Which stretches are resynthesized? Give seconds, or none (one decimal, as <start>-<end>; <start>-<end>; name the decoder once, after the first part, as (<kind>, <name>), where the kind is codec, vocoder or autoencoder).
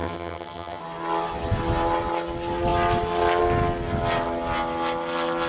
0.0-0.8 (vocoder, HiFi-GAN)